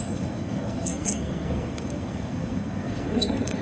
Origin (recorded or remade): remade